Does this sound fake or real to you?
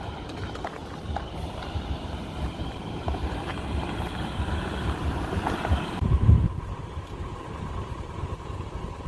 fake